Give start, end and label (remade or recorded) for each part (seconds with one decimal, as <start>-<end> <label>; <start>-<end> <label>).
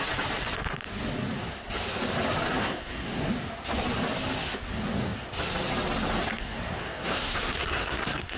0.0-2.6 recorded; 2.6-3.3 remade; 3.3-6.3 recorded; 6.3-8.4 remade